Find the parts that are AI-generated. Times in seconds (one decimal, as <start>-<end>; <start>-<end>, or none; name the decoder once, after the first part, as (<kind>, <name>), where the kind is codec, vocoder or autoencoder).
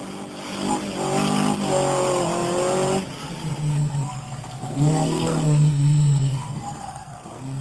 3.7-7.6 (codec, SNAC)